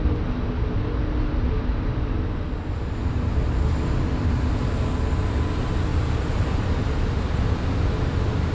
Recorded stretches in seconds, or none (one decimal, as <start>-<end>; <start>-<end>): 0.0-8.5